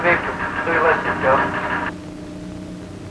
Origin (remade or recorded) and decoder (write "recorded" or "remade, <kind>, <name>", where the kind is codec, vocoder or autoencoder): recorded